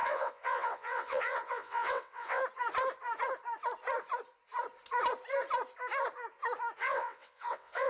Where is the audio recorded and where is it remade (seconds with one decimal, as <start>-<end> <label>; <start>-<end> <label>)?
0.0-2.4 remade; 2.4-6.8 recorded; 6.8-7.9 remade

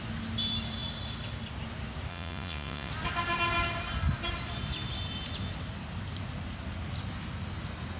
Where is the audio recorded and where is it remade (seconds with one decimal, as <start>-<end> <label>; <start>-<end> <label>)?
0.0-2.1 recorded; 2.1-2.9 remade; 2.9-8.0 recorded

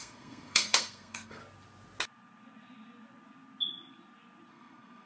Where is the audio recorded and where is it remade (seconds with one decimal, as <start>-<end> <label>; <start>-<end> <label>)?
0.0-1.4 remade; 1.4-4.5 recorded; 4.5-5.1 remade

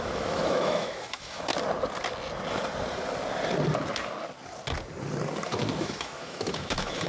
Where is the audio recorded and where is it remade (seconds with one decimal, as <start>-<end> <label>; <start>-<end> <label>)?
0.0-1.5 remade; 1.5-5.8 recorded; 5.8-7.1 remade

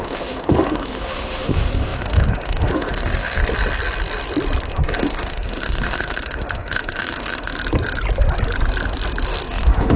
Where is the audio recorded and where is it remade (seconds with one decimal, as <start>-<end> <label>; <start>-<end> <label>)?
0.0-3.4 remade; 3.4-4.7 recorded; 4.7-7.5 remade; 7.5-9.5 recorded; 9.5-10.0 remade